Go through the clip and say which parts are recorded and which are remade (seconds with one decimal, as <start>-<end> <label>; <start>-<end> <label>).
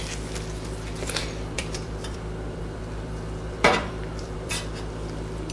0.0-1.2 recorded; 1.2-4.5 remade; 4.5-5.5 recorded